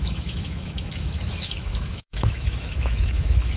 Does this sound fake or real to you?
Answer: fake